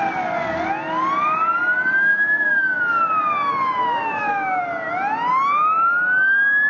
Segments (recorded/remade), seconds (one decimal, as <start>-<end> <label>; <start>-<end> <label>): 0.0-2.1 recorded; 2.1-2.8 remade; 2.8-3.8 recorded; 3.8-4.6 remade; 4.6-6.7 recorded